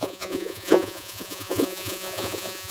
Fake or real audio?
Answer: fake